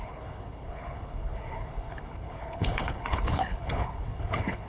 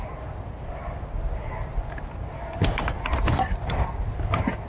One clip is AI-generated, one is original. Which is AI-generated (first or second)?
first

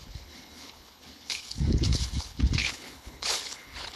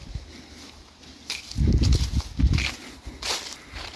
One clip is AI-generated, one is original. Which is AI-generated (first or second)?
first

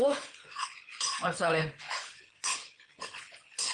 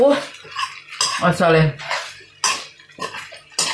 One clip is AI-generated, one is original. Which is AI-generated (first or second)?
first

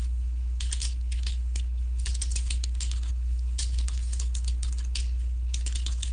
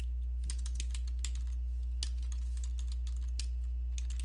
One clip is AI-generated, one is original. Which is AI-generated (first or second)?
first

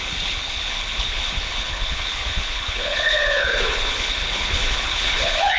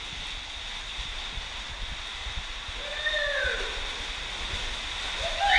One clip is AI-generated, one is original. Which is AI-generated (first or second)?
first